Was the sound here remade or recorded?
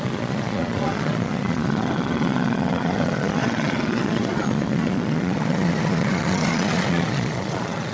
remade